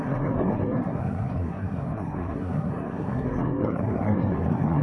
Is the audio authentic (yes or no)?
no